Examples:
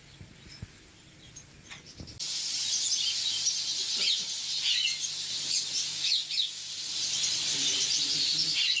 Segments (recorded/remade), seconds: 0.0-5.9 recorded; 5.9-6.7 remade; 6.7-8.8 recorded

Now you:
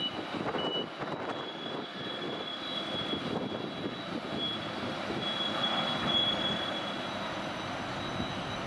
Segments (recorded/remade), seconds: 0.0-8.7 recorded

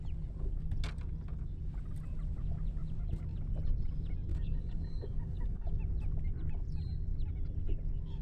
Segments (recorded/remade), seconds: 0.0-4.3 recorded; 4.3-5.8 remade; 5.8-8.2 recorded

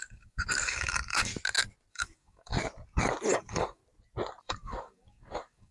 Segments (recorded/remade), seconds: 0.0-1.3 remade; 1.3-1.9 recorded; 1.9-2.5 remade; 2.5-3.3 recorded; 3.3-3.8 remade; 3.8-4.4 recorded; 4.4-5.7 remade

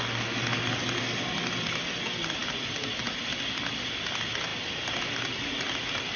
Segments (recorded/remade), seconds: 0.0-6.2 recorded

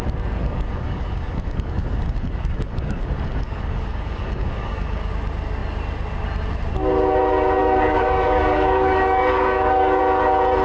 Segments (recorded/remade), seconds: 0.0-0.4 recorded; 0.4-5.1 remade; 5.1-7.6 recorded; 7.6-10.0 remade; 10.0-10.6 recorded